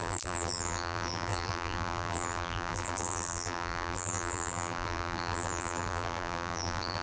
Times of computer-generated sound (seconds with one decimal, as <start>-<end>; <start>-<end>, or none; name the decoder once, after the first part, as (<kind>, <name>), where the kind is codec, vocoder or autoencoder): 0.0-7.0 (vocoder, BigVGAN v2)